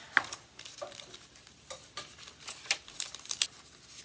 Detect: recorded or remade recorded